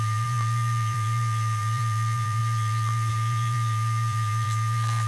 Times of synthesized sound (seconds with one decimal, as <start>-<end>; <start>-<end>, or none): 0.0-5.1